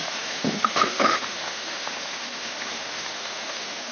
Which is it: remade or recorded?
remade